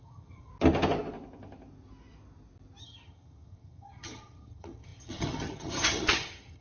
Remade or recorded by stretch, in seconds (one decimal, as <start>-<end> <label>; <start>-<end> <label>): 0.0-0.5 remade; 0.5-2.8 recorded; 2.8-6.6 remade